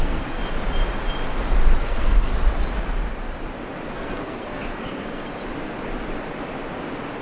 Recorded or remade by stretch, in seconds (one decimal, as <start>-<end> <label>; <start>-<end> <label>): 0.0-0.4 remade; 0.4-1.8 recorded; 1.8-2.3 remade; 2.3-3.9 recorded; 3.9-5.4 remade; 5.4-7.2 recorded